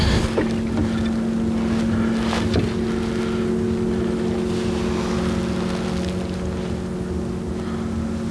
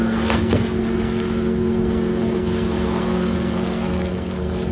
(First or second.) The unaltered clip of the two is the first